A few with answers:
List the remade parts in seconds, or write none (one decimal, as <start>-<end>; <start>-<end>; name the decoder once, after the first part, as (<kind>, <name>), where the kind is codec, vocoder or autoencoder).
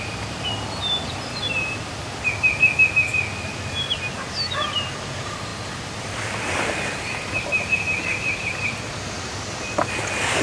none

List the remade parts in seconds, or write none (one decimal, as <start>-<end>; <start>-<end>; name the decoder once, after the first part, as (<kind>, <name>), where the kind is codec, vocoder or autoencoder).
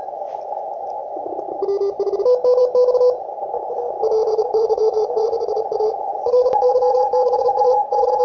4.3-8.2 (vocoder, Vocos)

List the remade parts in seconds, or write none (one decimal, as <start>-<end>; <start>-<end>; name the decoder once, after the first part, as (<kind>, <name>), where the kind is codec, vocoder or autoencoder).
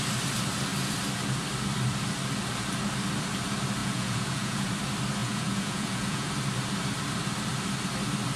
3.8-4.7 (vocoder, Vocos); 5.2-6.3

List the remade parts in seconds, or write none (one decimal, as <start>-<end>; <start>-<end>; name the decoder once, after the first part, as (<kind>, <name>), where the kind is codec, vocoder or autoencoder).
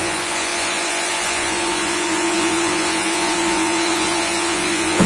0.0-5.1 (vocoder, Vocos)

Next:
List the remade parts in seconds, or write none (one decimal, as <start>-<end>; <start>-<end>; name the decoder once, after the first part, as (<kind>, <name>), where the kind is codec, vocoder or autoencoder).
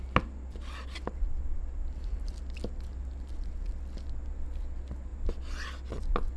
none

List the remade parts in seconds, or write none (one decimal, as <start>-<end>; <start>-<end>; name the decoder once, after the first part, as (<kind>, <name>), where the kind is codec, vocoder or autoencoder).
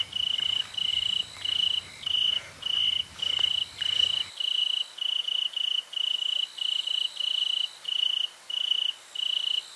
none